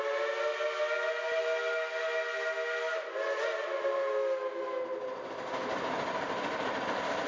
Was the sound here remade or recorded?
recorded